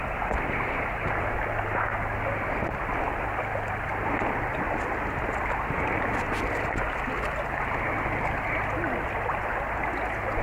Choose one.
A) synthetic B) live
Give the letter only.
B